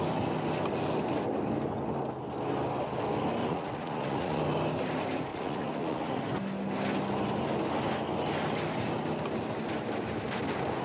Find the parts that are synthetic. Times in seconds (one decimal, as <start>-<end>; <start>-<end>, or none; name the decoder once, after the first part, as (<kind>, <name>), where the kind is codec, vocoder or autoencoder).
3.4-4.4 (vocoder, Vocos); 5.3-6.2